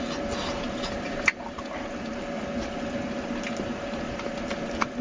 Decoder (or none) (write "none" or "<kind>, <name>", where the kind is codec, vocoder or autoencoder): none